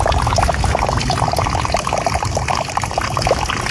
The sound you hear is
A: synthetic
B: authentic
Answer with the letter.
B